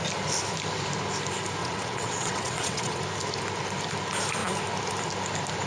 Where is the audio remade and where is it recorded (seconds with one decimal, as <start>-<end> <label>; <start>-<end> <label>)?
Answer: 0.0-1.6 recorded; 1.6-3.0 remade; 3.0-5.7 recorded